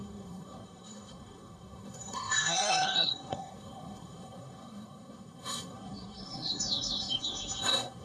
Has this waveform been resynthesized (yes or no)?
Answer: yes